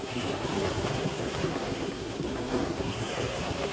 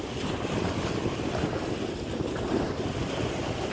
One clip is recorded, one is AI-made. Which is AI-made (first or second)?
first